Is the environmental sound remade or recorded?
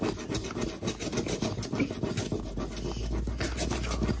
recorded